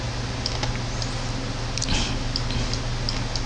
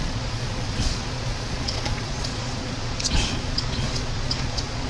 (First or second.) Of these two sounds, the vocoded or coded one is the second